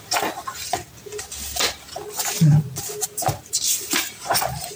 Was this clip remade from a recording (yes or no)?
no